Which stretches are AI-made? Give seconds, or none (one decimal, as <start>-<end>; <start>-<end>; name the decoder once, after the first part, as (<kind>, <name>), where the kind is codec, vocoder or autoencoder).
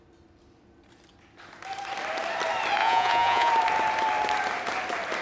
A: 2.8-3.5 (vocoder, Vocos)